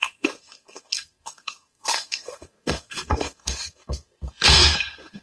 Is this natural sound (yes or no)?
no